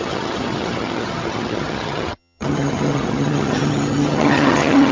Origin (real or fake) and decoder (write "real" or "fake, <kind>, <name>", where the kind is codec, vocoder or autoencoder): fake, vocoder, HiFi-GAN